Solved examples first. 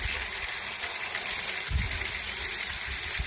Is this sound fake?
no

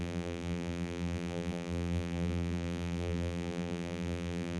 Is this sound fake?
yes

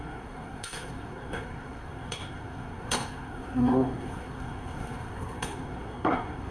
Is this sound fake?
yes